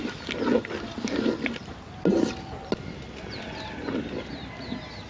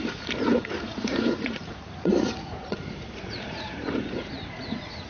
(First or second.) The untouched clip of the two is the first